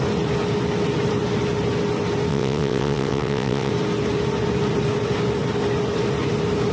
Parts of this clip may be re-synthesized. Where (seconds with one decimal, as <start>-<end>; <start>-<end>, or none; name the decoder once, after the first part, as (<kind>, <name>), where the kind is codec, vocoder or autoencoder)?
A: 2.3-3.7 (vocoder, WaveNeXt)